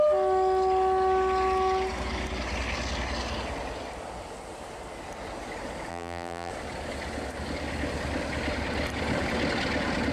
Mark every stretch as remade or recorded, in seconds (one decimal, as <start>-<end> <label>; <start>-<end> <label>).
0.0-5.9 recorded; 5.9-6.5 remade; 6.5-10.1 recorded